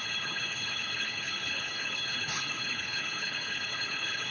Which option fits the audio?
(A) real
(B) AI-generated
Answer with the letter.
B